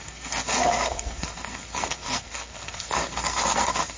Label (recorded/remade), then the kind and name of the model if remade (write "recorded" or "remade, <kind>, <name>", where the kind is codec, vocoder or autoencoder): remade, codec, SNAC